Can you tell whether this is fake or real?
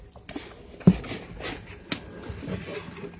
real